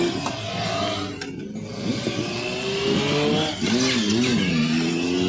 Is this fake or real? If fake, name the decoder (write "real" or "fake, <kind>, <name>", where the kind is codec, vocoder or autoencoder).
real